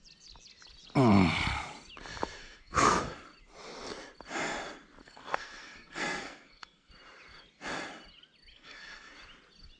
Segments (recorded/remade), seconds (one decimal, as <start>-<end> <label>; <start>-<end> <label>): 0.0-2.4 recorded; 2.4-3.0 remade; 3.0-5.0 recorded; 5.0-6.9 remade; 6.9-8.5 recorded; 8.5-9.1 remade; 9.1-9.8 recorded

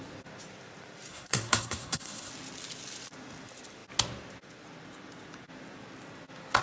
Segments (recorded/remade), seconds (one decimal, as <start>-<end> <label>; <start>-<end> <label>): 0.0-1.1 recorded; 1.1-2.3 remade; 2.3-6.6 recorded

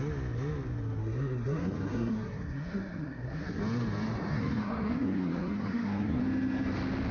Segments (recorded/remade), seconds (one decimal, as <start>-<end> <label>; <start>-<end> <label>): 0.0-1.0 recorded; 1.0-3.6 remade; 3.6-4.3 recorded; 4.3-6.2 remade; 6.2-7.1 recorded

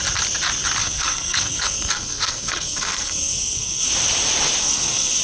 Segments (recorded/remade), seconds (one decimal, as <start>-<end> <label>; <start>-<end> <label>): 0.0-0.8 recorded; 0.8-3.9 remade; 3.9-4.6 recorded; 4.6-5.2 remade

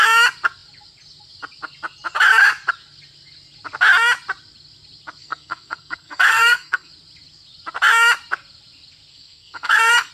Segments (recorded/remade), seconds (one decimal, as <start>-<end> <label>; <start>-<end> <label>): 0.0-5.2 recorded; 5.2-6.9 remade; 6.9-9.1 recorded; 9.1-10.1 remade

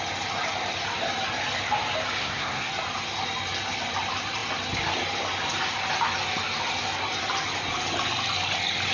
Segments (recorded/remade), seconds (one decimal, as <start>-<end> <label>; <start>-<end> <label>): 0.0-2.2 recorded; 2.2-2.7 remade; 2.7-8.9 recorded

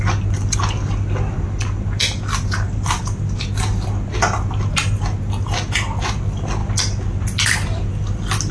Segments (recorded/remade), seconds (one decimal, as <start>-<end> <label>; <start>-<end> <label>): 0.0-8.5 recorded

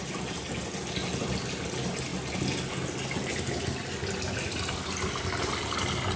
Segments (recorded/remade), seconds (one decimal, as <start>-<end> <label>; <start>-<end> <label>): 0.0-6.2 recorded